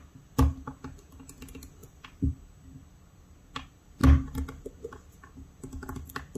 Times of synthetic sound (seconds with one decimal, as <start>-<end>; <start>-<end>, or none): 1.8-2.3